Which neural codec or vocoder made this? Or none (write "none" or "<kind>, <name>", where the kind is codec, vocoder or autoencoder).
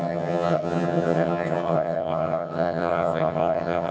vocoder, HiFi-GAN